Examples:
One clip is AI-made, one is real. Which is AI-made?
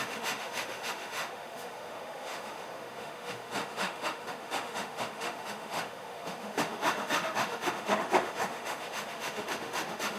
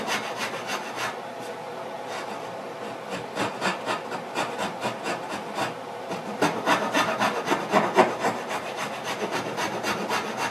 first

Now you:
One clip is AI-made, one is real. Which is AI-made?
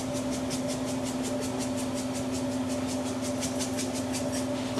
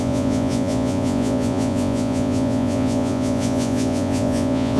second